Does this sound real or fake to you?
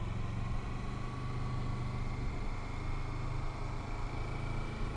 real